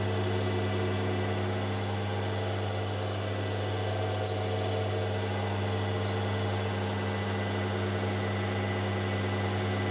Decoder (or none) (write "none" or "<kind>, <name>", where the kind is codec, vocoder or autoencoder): none